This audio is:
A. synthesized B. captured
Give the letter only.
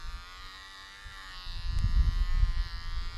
B